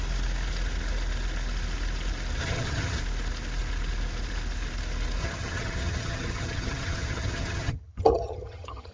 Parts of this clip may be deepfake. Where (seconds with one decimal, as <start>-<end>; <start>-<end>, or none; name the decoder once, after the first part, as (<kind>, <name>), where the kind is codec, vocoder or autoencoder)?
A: 2.4-3.0 (vocoder, HiFi-GAN); 5.2-8.9